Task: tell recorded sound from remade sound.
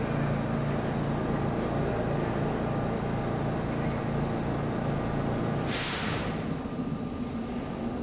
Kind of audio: recorded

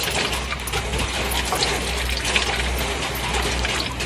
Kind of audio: recorded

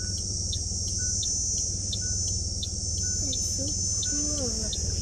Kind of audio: recorded